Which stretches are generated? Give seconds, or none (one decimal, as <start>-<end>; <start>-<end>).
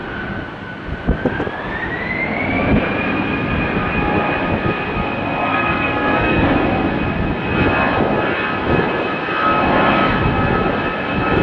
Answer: 5.4-6.5